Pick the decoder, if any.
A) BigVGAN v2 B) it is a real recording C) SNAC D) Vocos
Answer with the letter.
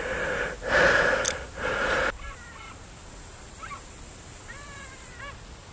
B